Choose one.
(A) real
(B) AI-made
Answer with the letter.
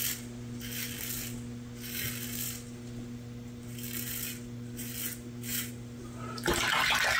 A